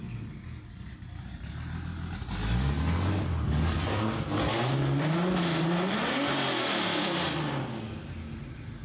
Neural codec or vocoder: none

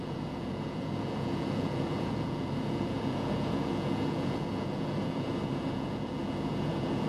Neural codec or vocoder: vocoder, Vocos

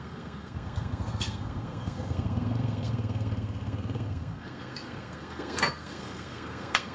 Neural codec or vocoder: codec, SNAC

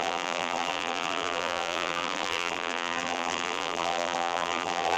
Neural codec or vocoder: vocoder, BigVGAN v2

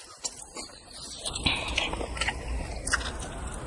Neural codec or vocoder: none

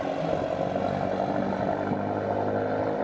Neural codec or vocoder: none